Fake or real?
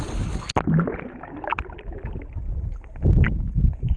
real